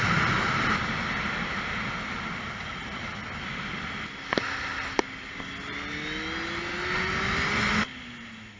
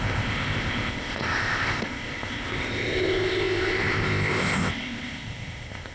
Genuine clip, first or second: first